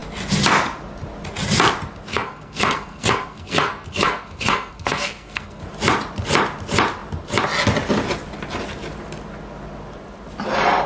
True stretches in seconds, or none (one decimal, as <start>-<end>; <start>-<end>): 0.0-2.1; 5.6-10.9